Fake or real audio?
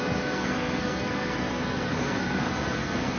fake